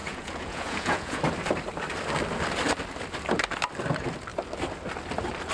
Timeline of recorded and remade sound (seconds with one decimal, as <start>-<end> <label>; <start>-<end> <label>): 0.0-1.2 remade; 1.2-5.5 recorded